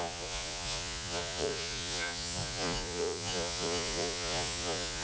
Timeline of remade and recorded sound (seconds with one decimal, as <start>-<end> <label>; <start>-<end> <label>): 0.0-5.0 remade